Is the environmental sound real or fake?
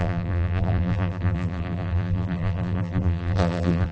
fake